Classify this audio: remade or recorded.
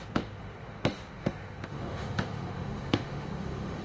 remade